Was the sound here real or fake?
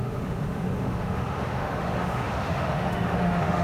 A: fake